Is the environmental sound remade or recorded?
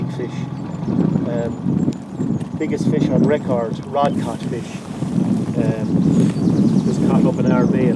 recorded